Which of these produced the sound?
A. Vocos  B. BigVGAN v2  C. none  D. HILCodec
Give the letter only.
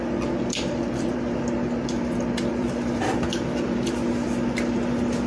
B